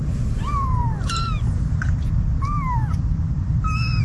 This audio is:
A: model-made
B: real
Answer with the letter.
B